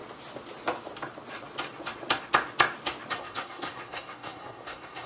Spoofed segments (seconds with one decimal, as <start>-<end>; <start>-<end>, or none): 3.1-5.1